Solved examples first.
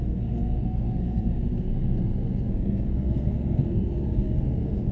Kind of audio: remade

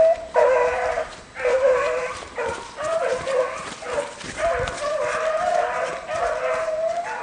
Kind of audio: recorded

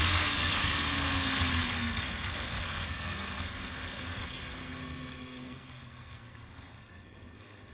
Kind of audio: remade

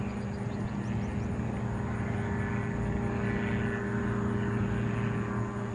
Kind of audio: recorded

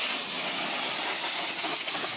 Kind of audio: recorded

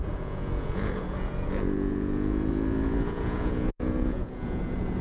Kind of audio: remade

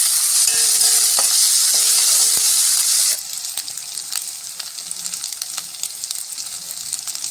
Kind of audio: recorded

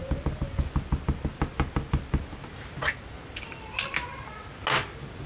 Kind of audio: recorded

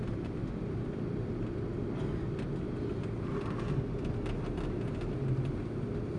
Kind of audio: recorded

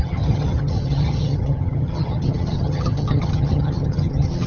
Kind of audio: remade